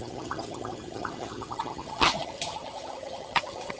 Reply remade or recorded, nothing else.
remade